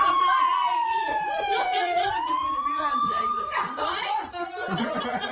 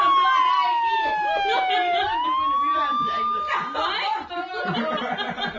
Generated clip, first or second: first